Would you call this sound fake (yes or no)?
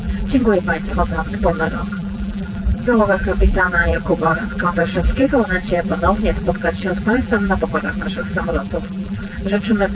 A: yes